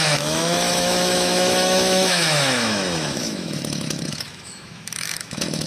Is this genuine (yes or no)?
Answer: no